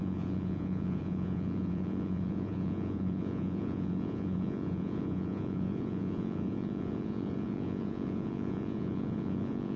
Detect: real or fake fake